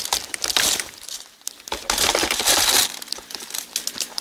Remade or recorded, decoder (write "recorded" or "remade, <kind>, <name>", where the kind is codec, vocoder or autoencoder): recorded